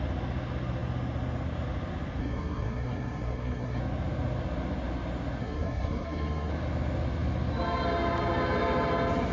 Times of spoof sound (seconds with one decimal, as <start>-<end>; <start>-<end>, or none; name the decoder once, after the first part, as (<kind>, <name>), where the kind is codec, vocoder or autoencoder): 2.2-3.8 (codec, SNAC); 5.4-6.5